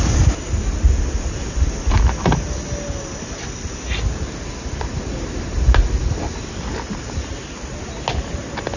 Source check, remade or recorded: recorded